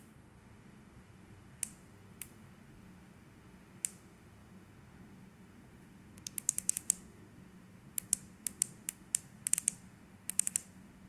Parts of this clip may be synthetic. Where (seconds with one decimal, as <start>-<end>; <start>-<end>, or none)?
0.0-11.1